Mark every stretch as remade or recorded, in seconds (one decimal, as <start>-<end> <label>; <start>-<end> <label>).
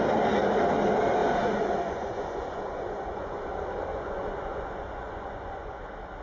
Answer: 0.0-1.2 recorded; 1.2-3.5 remade; 3.5-3.9 recorded; 3.9-5.8 remade; 5.8-6.2 recorded